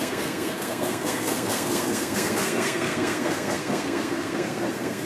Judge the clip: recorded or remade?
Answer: remade